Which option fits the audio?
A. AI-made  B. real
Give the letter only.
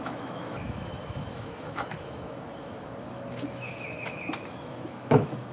A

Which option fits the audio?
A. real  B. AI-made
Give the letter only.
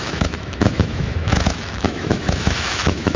B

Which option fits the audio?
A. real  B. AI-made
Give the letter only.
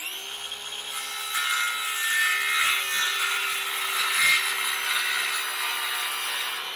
A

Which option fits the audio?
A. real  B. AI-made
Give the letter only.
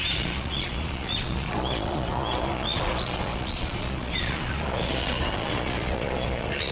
B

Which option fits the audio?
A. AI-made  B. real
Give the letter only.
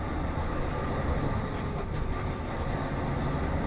B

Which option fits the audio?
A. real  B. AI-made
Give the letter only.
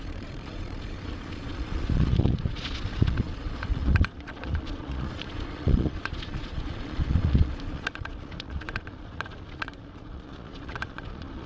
B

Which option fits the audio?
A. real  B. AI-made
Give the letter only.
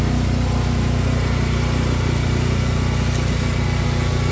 A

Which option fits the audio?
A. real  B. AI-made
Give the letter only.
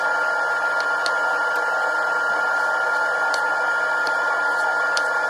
A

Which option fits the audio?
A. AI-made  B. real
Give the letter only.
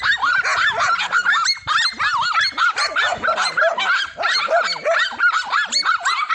B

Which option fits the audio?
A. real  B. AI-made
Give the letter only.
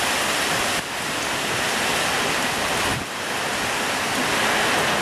A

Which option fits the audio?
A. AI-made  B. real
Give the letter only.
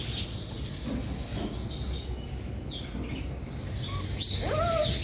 B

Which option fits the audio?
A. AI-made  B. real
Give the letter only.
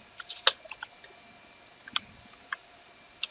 B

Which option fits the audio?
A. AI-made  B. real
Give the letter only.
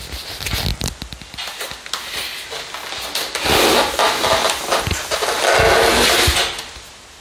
B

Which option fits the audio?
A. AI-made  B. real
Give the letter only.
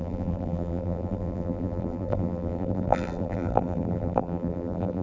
A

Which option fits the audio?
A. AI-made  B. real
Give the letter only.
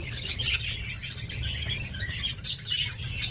B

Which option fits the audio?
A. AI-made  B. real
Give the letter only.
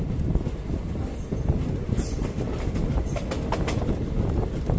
B